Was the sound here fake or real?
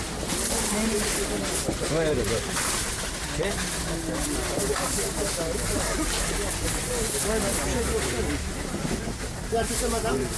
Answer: real